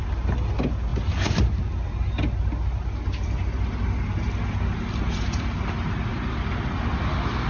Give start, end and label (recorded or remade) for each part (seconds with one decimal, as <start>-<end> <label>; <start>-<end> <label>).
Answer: 0.0-7.5 recorded